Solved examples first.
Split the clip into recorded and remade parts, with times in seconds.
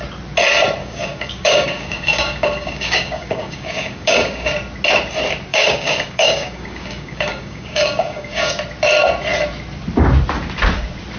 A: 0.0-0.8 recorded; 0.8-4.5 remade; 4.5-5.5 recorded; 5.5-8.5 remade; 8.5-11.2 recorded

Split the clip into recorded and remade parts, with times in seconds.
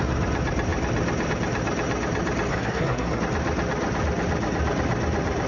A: 0.0-2.5 recorded; 2.5-3.2 remade; 3.2-5.5 recorded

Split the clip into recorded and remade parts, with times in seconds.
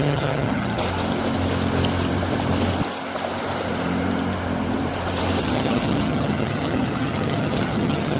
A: 0.0-0.8 remade; 0.8-5.4 recorded; 5.4-8.2 remade